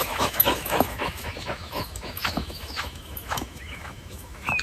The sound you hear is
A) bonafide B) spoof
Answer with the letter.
B